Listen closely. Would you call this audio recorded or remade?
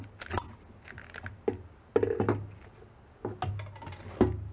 recorded